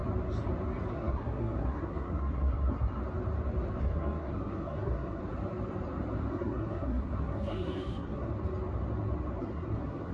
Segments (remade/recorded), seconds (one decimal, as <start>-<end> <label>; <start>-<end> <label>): 0.0-0.9 recorded; 0.9-3.0 remade; 3.0-3.8 recorded; 3.8-5.2 remade; 5.2-6.3 recorded; 6.3-8.3 remade; 8.3-9.4 recorded; 9.4-10.1 remade